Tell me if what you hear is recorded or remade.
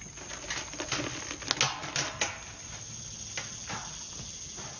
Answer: recorded